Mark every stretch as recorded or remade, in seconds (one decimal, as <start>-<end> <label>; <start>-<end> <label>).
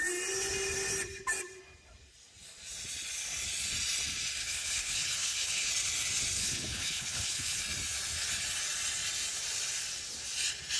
0.0-4.4 recorded; 4.4-5.7 remade; 5.7-6.4 recorded; 6.4-7.6 remade; 7.6-10.8 recorded